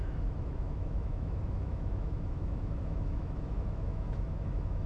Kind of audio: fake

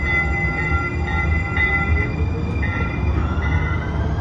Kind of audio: real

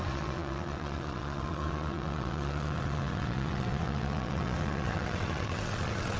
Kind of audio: fake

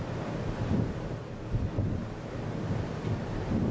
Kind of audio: real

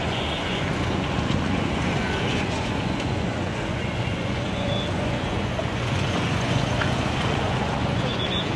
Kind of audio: fake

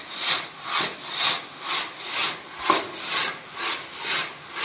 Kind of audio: real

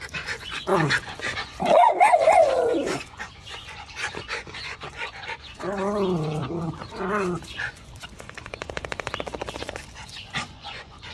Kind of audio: fake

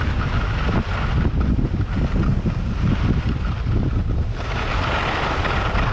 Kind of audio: real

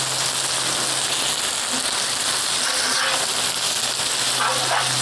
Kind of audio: real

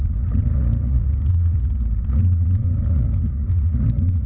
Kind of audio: fake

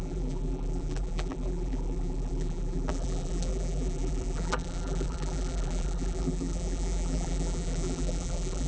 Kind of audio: fake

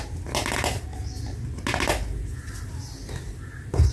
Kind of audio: real